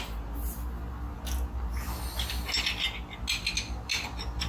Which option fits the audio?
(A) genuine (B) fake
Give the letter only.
A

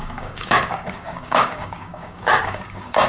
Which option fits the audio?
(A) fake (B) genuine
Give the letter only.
A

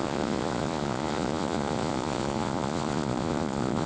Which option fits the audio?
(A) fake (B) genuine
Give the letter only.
A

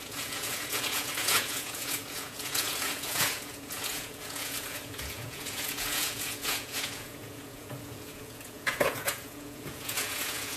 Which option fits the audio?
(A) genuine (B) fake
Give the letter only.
B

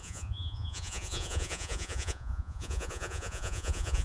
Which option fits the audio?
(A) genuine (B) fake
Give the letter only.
B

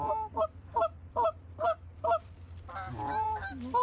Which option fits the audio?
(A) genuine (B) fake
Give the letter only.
B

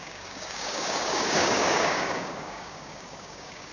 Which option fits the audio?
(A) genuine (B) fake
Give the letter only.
B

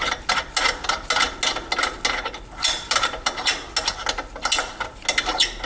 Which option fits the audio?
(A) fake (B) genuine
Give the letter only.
B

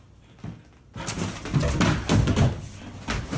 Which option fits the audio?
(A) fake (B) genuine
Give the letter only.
B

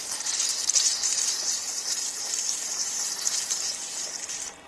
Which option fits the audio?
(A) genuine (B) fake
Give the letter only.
B